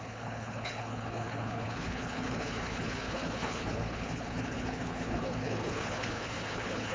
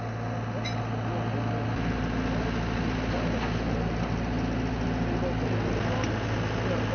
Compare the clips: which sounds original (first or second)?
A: second